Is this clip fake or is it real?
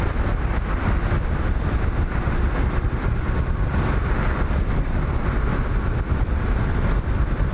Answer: fake